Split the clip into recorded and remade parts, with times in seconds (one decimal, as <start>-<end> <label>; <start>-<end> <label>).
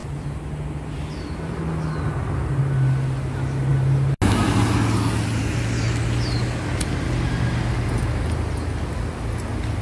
0.0-9.8 recorded